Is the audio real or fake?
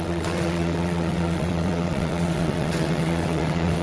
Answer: fake